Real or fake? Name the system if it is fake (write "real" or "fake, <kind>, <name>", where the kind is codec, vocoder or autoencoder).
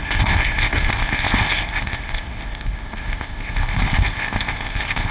fake, codec, ZipCodec